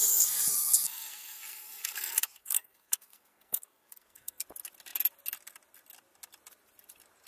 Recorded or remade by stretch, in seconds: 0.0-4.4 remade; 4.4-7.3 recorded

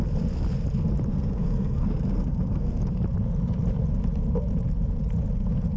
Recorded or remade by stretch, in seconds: 0.0-1.1 recorded; 1.1-2.8 remade; 2.8-5.8 recorded

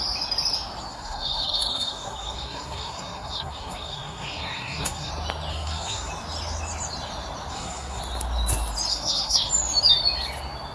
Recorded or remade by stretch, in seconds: 0.0-0.9 recorded; 0.9-5.1 remade; 5.1-5.5 recorded; 5.5-6.1 remade; 6.1-7.5 recorded; 7.5-8.0 remade; 8.0-8.9 recorded; 8.9-9.5 remade; 9.5-10.7 recorded